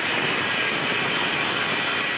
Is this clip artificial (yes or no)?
no